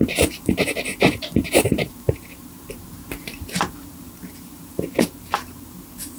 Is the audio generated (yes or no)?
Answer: yes